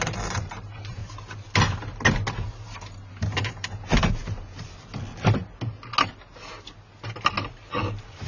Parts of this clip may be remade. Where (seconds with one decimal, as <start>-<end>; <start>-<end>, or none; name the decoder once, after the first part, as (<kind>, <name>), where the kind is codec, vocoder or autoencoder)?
0.0-1.0 (vocoder, BigVGAN v2); 3.1-4.2; 7.7-8.3